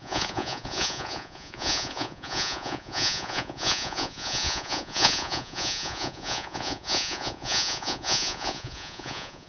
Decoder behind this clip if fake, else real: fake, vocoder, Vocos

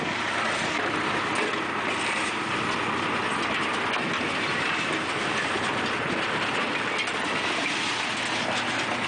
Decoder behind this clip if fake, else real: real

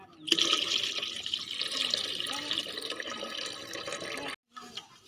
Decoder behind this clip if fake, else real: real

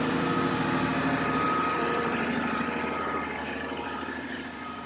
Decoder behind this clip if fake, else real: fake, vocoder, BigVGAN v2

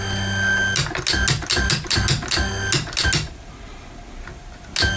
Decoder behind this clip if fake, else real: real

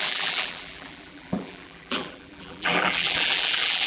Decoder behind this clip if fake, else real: fake, vocoder, BigVGAN v2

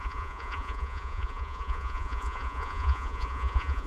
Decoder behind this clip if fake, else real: fake, vocoder, Vocos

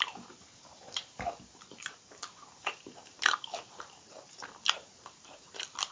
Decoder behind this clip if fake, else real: fake, vocoder, BigVGAN v2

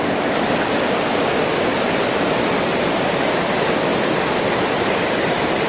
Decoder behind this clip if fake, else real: fake, vocoder, BigVGAN v2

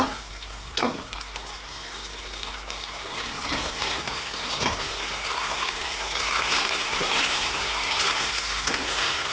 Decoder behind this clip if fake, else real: fake, codec, SNAC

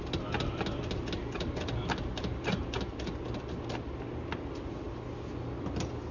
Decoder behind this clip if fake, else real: real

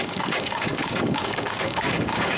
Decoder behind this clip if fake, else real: fake, codec, DAC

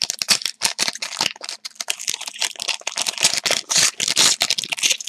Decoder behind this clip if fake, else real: real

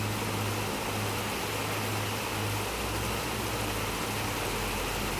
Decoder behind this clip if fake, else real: real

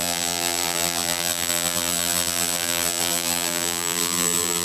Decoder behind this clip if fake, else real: fake, vocoder, BigVGAN v2